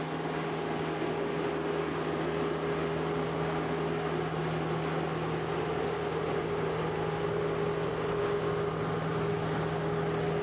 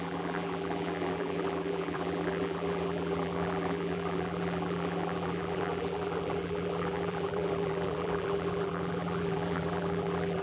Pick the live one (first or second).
first